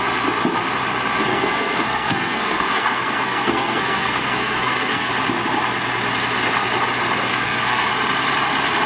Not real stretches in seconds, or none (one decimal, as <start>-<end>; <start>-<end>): 1.3-5.1; 7.3-7.9